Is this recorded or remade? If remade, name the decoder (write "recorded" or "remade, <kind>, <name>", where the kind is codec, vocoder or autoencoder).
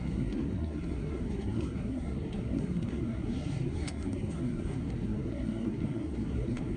remade, codec, SNAC